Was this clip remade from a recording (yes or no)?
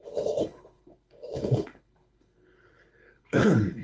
yes